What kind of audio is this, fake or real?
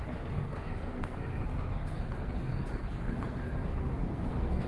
fake